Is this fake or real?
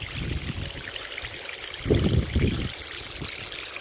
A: real